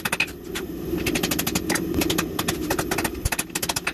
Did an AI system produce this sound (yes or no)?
no